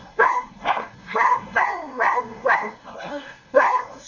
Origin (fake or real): fake